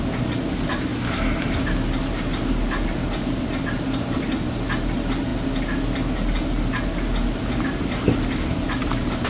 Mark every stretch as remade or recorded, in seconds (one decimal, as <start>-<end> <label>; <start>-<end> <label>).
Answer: 0.0-9.3 recorded